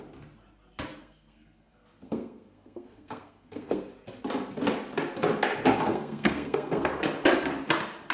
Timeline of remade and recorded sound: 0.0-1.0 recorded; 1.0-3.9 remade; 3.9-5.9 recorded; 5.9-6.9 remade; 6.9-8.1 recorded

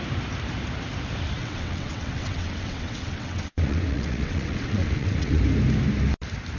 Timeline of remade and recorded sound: 0.0-1.4 recorded; 1.4-5.4 remade; 5.4-6.6 recorded

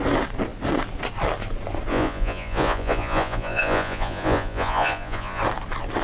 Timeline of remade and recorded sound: 0.0-1.9 recorded; 1.9-5.4 remade; 5.4-6.0 recorded

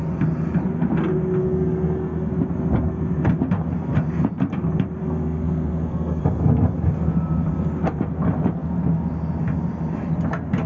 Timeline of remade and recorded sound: 0.0-1.4 recorded; 1.4-2.3 remade; 2.3-5.0 recorded; 5.0-6.2 remade; 6.2-10.7 recorded

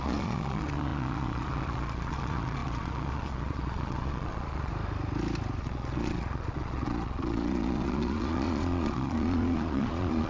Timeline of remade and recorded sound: 0.0-4.7 remade; 4.7-5.6 recorded; 5.6-10.3 remade